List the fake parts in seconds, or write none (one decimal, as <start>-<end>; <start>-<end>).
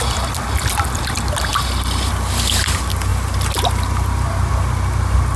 none